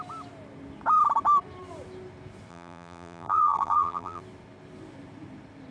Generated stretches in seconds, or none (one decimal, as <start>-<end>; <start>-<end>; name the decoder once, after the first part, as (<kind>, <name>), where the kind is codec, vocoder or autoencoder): 2.5-4.2 (vocoder, BigVGAN v2)